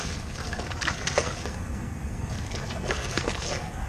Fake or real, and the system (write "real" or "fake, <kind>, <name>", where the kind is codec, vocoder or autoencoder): fake, codec, SNAC